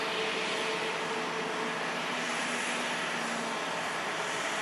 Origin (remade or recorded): recorded